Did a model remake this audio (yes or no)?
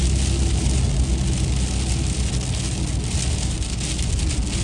no